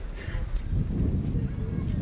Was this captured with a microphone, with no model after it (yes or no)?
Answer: yes